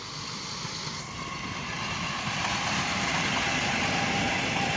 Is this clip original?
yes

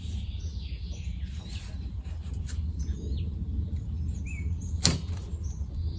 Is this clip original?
yes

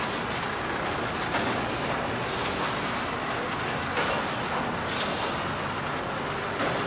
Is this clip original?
yes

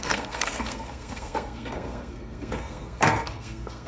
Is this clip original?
no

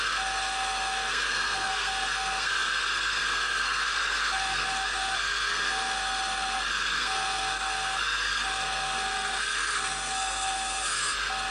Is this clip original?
no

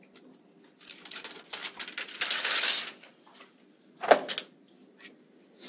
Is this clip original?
yes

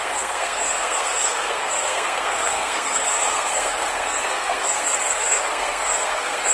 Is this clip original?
no